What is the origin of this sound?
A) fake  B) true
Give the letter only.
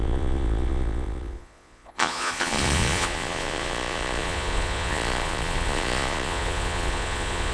A